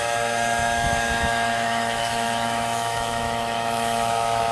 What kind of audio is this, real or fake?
fake